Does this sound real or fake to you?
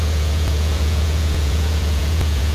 fake